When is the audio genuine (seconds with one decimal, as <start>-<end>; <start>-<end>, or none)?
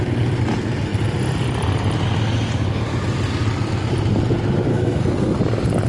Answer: 0.0-4.7; 5.4-5.9